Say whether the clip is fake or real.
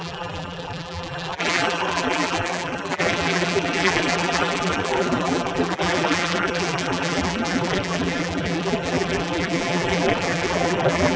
fake